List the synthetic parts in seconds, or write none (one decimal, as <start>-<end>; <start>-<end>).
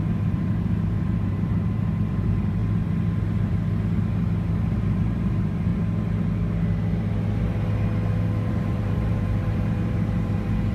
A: 0.0-2.6; 4.8-5.7; 8.5-10.7